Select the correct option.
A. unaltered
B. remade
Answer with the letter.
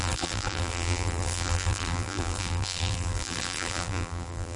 B